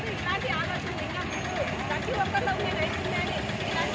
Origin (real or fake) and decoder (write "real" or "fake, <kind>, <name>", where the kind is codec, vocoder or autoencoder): real